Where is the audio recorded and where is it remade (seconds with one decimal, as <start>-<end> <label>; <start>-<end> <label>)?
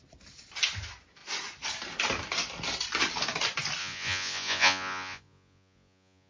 0.0-3.8 recorded; 3.8-6.3 remade